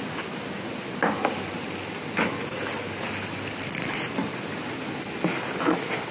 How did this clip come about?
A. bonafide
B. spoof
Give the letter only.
A